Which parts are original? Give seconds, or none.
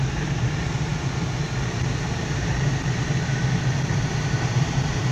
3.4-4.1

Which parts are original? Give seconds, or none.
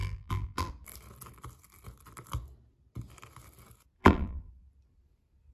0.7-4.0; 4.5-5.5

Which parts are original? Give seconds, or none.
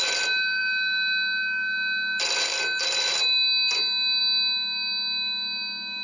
0.0-6.0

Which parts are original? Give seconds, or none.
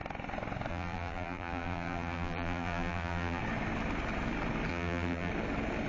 0.0-0.7; 3.4-4.7; 5.3-5.9